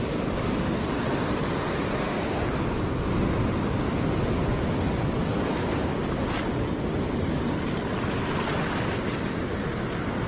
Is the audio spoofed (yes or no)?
no